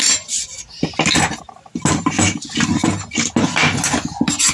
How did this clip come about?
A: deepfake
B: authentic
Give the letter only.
B